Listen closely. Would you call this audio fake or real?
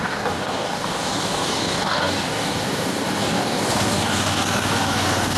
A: fake